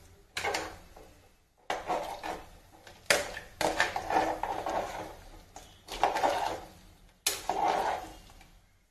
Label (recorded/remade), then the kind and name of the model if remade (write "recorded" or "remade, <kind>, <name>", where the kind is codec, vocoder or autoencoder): recorded